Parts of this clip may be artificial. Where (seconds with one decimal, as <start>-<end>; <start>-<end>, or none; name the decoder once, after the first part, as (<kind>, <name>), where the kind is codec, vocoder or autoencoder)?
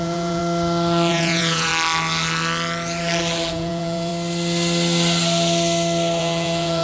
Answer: 0.0-0.4 (vocoder, Vocos); 1.1-1.7; 3.5-4.1; 6.2-6.8